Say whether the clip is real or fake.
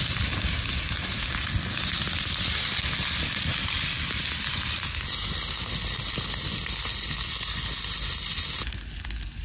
real